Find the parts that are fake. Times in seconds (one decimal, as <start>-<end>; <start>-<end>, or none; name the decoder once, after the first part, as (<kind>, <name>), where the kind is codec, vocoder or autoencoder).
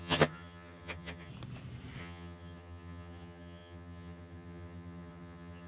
0.0-1.3 (vocoder, HiFi-GAN); 2.0-5.7